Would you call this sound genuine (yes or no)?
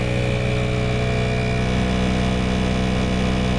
yes